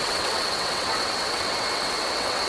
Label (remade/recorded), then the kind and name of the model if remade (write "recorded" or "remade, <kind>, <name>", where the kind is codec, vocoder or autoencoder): remade, vocoder, WaveNeXt